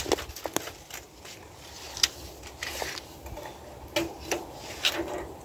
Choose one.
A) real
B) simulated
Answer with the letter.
A